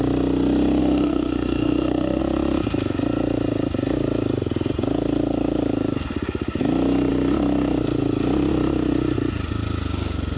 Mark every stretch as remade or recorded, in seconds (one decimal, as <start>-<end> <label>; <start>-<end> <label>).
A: 0.0-0.8 recorded; 0.8-2.2 remade; 2.2-10.4 recorded